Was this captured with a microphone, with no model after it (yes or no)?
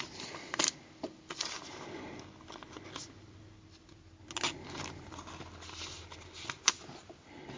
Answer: yes